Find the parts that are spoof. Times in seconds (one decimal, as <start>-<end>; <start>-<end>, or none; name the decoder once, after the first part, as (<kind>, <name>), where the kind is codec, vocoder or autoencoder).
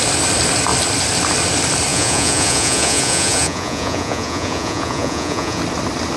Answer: 1.9-5.6 (vocoder, Vocos)